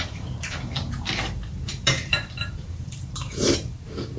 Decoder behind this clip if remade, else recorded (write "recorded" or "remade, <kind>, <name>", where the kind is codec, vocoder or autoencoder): remade, vocoder, BigVGAN v2